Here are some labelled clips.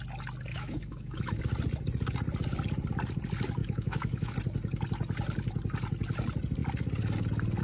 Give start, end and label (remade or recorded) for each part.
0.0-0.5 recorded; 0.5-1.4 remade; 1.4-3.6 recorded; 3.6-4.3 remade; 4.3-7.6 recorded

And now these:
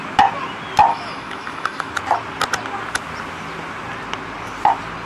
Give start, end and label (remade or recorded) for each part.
0.0-0.9 recorded; 0.9-1.9 remade; 1.9-5.1 recorded

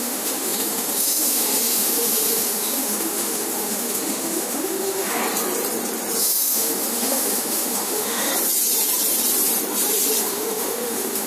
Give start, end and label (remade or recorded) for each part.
0.0-5.2 remade; 5.2-6.2 recorded; 6.2-8.3 remade; 8.3-10.2 recorded; 10.2-11.3 remade